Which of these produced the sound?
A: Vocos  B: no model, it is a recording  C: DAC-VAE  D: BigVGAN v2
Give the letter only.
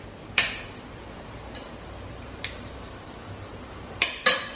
D